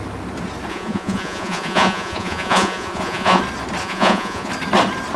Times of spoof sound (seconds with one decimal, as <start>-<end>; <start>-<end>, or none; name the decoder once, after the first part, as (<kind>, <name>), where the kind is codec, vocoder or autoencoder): 0.7-3.4 (vocoder, Vocos); 3.8-4.5